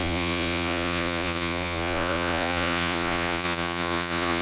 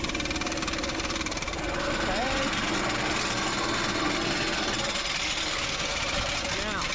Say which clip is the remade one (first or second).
first